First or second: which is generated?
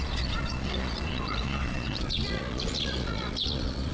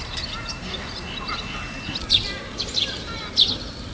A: first